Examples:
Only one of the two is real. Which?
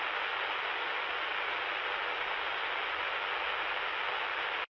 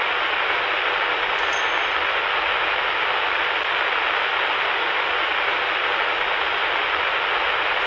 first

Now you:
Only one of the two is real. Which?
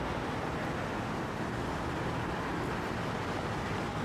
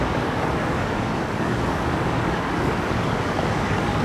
first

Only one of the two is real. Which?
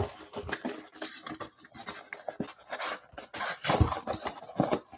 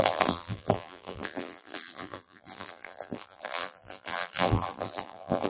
first